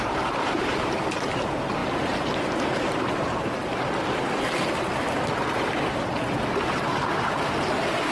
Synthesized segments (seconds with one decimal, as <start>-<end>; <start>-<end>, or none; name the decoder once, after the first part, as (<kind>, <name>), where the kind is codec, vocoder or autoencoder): 0.0-3.6 (vocoder, BigVGAN v2); 6.1-8.1